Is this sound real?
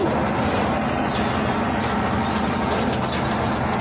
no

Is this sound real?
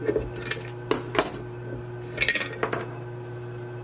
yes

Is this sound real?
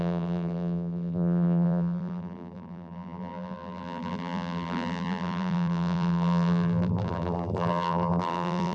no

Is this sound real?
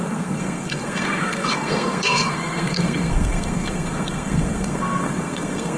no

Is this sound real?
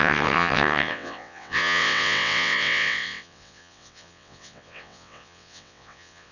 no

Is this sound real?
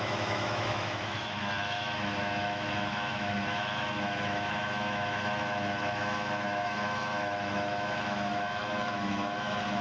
no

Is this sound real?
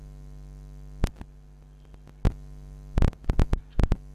yes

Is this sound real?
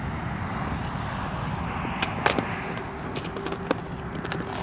yes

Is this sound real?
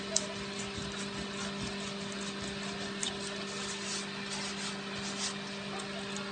yes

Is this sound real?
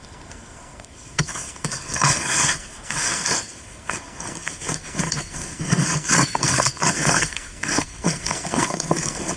no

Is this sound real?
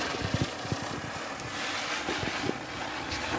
yes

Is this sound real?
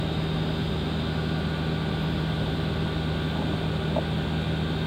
yes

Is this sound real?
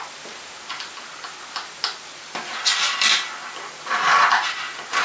yes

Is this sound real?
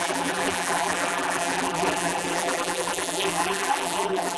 no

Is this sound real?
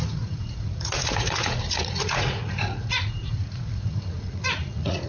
no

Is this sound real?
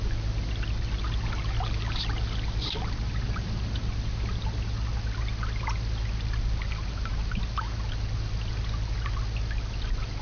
yes